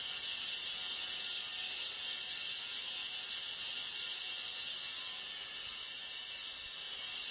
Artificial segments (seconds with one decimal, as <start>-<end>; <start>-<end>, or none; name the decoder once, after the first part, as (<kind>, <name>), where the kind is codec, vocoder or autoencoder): none